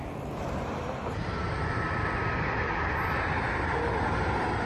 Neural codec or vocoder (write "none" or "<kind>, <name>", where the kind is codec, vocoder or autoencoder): none